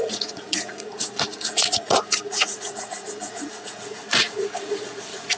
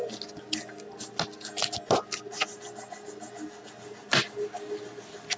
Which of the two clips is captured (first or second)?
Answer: second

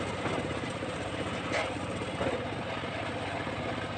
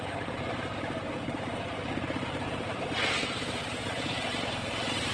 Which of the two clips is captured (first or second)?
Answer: first